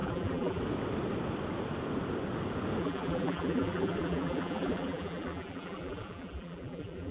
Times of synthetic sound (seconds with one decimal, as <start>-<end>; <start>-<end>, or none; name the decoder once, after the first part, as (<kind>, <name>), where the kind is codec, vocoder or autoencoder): 0.0-0.6 (vocoder, BigVGAN v2); 2.8-7.1